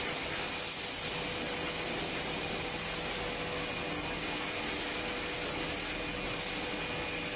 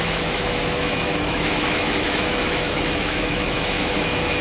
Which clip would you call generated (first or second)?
second